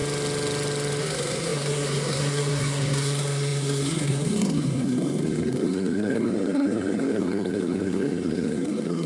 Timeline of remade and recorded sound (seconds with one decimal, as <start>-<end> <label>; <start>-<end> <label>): 0.0-1.0 recorded; 1.0-9.1 remade